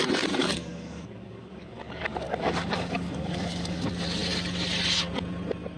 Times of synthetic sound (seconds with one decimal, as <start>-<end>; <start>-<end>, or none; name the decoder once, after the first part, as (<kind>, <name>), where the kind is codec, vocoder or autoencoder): 0.4-3.9 (codec, DAC)